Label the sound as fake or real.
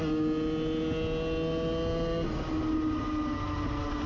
real